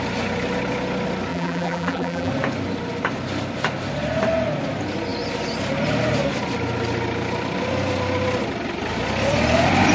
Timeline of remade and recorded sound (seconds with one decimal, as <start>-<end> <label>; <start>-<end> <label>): 0.0-1.3 recorded; 1.3-2.3 remade; 2.3-9.9 recorded